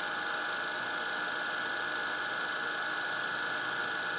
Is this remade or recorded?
recorded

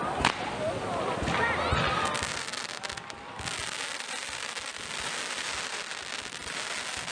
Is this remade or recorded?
recorded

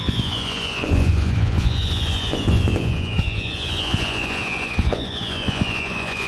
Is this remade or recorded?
remade